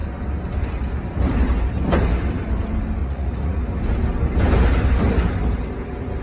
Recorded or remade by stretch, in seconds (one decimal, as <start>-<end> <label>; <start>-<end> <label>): 0.0-3.0 recorded; 3.0-3.6 remade; 3.6-6.2 recorded